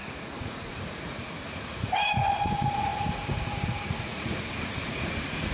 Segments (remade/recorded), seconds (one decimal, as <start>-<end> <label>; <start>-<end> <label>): 0.0-5.5 remade